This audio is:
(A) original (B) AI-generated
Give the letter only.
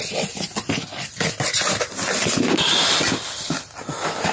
A